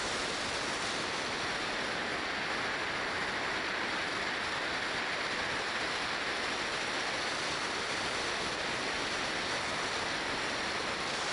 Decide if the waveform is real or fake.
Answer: real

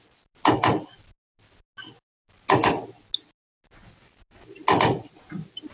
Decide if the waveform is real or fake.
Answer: real